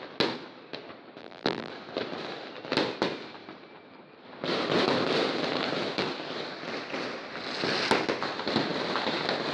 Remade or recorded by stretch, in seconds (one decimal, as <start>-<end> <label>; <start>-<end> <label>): 0.0-1.2 recorded; 1.2-1.7 remade; 1.7-9.5 recorded